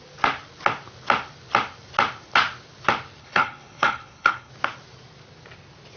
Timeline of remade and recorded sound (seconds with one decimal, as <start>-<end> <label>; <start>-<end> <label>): 0.0-3.2 recorded; 3.2-4.5 remade; 4.5-6.0 recorded